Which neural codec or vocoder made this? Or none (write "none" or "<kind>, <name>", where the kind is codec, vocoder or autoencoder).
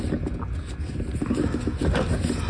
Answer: none